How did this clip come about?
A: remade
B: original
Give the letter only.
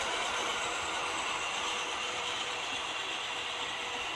A